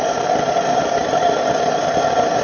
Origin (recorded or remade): recorded